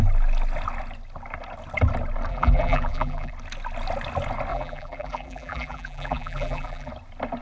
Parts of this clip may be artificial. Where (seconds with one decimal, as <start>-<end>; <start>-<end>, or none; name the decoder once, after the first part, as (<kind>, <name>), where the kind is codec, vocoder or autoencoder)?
2.3-3.3 (vocoder, BigVGAN v2); 4.5-6.9